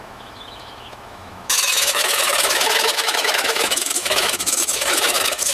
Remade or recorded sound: remade